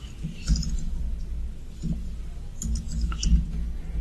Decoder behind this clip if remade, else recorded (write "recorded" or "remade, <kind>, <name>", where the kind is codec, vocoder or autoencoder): recorded